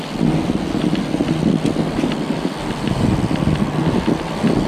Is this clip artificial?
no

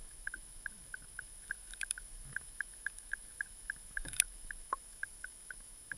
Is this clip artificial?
yes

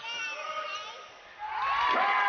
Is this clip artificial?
no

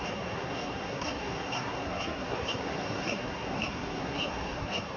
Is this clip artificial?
yes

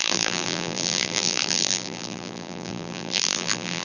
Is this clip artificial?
yes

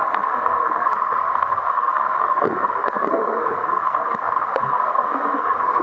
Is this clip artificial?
yes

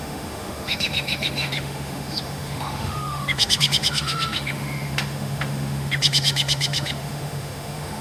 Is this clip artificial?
yes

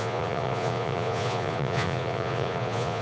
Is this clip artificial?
yes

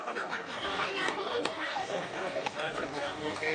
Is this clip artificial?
yes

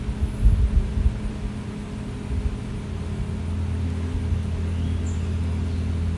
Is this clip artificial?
no